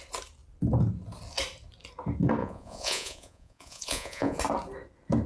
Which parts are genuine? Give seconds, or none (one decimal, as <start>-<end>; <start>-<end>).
0.0-2.4; 4.4-5.3